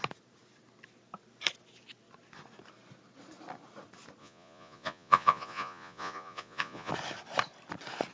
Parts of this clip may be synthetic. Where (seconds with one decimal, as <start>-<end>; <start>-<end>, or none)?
4.2-6.9